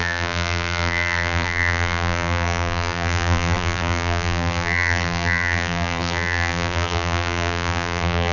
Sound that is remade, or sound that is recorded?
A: remade